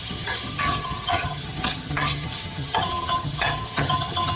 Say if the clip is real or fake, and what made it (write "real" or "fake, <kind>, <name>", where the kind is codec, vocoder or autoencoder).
fake, vocoder, HiFi-GAN